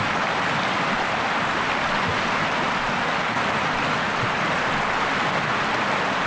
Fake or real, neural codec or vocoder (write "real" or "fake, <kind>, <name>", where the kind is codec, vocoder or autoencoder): real